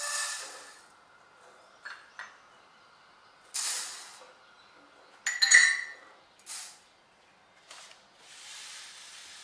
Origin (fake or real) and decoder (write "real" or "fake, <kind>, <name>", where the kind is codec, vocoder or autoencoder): real